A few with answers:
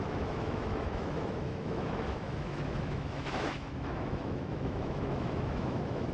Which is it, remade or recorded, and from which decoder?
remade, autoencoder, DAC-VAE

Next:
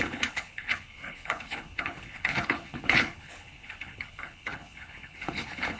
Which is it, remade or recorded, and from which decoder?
remade, codec, HILCodec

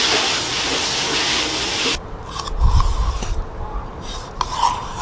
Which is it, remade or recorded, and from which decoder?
recorded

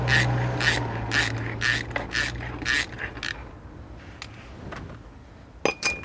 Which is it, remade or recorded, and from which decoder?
recorded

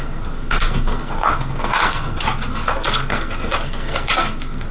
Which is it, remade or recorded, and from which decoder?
remade, codec, SNAC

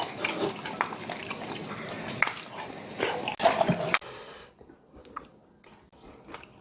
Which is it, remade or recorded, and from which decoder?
recorded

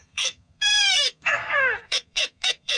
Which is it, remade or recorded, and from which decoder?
remade, codec, SNAC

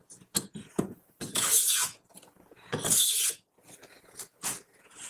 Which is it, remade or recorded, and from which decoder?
remade, vocoder, Vocos